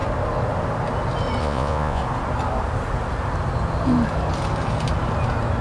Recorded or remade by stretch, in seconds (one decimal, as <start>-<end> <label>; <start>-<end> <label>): 0.0-1.4 recorded; 1.4-2.0 remade; 2.0-5.6 recorded